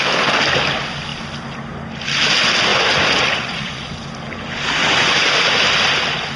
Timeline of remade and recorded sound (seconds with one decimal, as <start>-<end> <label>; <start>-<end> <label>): 0.0-2.7 recorded; 2.7-3.9 remade; 3.9-4.8 recorded; 4.8-5.3 remade; 5.3-6.4 recorded